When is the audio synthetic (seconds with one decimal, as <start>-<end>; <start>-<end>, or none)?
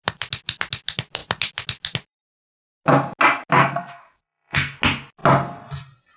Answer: 3.6-4.8